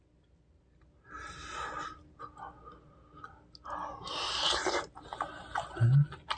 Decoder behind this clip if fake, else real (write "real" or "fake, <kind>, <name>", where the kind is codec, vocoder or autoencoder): real